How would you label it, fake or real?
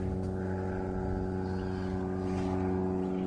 real